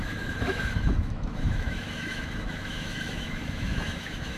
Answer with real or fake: fake